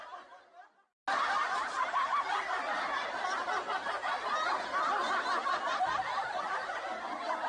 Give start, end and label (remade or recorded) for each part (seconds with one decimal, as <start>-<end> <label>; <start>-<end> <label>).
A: 0.0-7.5 recorded